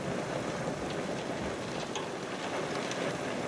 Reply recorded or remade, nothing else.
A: recorded